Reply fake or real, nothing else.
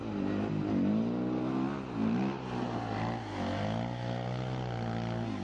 real